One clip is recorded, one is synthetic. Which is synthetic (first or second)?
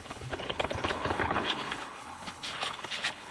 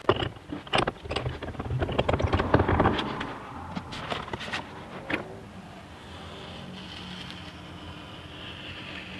first